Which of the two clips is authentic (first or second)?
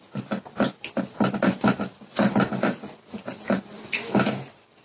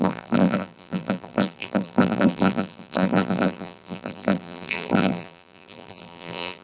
first